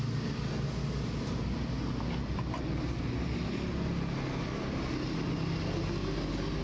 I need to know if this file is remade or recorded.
recorded